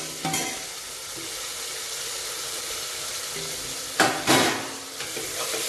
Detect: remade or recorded recorded